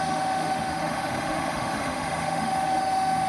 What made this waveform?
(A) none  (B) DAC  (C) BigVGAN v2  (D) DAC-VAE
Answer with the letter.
D